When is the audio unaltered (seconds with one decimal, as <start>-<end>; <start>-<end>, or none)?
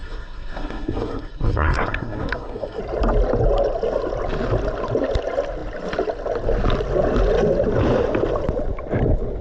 2.8-9.4